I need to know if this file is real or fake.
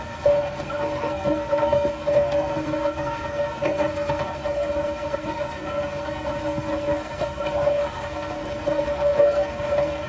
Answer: fake